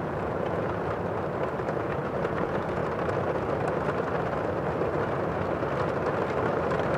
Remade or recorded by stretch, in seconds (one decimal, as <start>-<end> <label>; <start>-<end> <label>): 0.0-0.8 remade; 0.8-1.7 recorded; 1.7-2.8 remade; 2.8-7.0 recorded